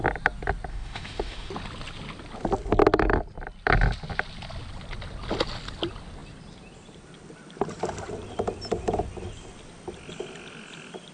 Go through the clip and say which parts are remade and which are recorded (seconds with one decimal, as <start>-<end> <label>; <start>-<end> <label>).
0.0-0.7 recorded; 0.7-1.5 remade; 1.5-11.1 recorded